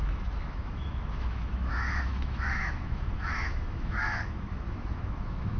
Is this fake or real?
fake